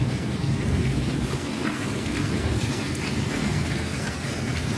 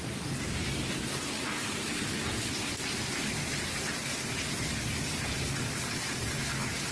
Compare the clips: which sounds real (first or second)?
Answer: second